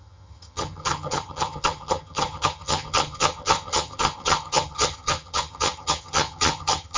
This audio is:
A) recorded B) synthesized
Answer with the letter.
B